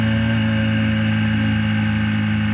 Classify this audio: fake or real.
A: real